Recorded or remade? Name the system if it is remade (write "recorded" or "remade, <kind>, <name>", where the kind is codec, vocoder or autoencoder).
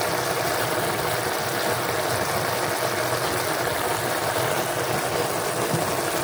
recorded